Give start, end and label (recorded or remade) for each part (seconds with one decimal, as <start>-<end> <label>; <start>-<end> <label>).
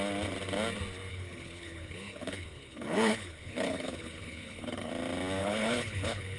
0.0-1.1 recorded; 1.1-4.9 remade; 4.9-5.4 recorded; 5.4-6.4 remade